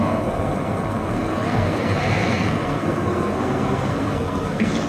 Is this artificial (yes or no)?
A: yes